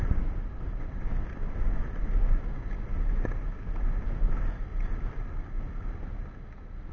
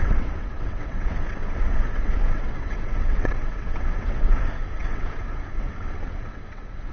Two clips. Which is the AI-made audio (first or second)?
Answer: second